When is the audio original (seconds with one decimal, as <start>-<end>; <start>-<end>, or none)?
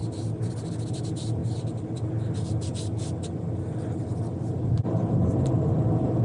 0.0-6.2